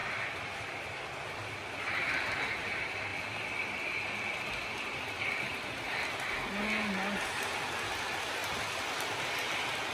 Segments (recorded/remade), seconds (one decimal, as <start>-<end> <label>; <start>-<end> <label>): 0.0-1.7 remade; 1.7-3.1 recorded; 3.1-6.3 remade; 6.3-8.4 recorded; 8.4-9.2 remade; 9.2-9.9 recorded